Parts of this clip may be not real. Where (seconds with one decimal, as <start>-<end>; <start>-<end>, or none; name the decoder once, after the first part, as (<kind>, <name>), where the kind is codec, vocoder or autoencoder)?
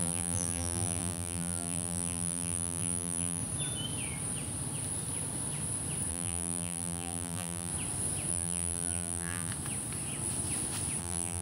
0.0-3.4 (vocoder, BigVGAN v2); 6.1-7.7; 8.3-9.5; 11.0-11.4